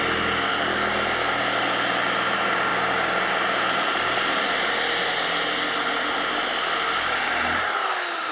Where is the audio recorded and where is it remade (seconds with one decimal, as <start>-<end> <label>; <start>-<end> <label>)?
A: 0.0-8.3 recorded